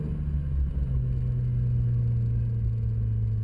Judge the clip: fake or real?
real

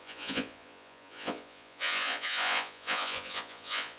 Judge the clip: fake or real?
fake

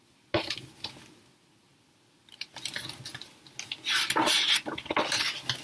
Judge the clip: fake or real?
real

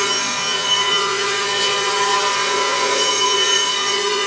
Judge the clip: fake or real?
fake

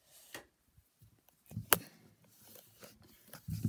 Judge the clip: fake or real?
real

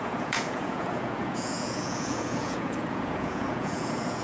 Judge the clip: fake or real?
fake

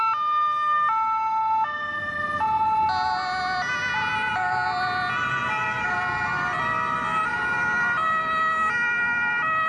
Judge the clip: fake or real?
real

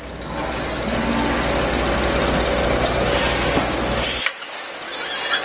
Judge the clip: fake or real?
real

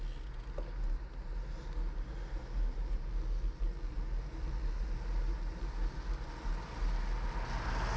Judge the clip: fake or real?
real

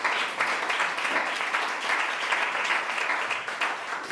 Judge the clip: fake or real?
real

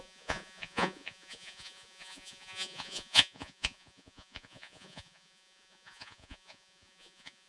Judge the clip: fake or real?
fake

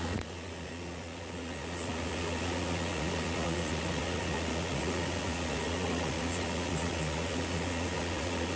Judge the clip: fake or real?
fake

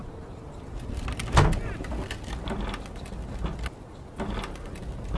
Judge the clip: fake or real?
real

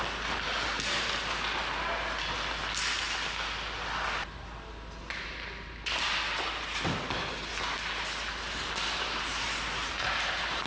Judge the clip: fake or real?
real